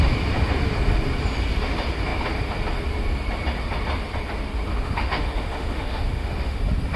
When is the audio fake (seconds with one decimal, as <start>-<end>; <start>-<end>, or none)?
4.7-6.6